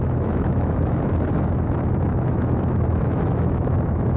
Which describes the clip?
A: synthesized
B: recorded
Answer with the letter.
A